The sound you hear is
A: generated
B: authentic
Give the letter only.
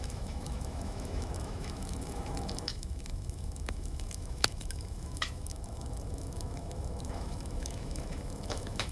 A